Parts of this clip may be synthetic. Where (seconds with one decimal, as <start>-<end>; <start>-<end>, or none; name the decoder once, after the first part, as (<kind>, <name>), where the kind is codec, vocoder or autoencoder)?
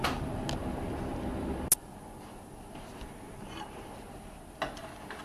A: none